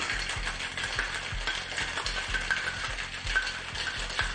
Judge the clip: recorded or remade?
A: recorded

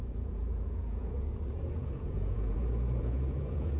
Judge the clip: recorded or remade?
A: remade